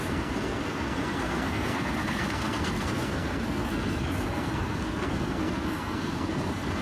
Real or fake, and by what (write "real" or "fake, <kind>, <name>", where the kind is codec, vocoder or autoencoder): fake, codec, SNAC